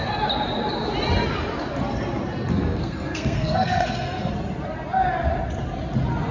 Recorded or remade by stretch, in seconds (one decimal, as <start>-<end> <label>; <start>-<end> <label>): 0.0-2.5 recorded; 2.5-4.3 remade; 4.3-6.3 recorded